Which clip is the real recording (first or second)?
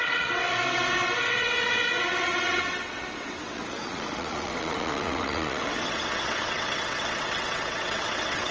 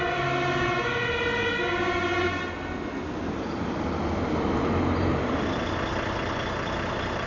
second